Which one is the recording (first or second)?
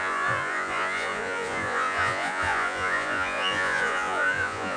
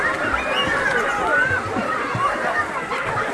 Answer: second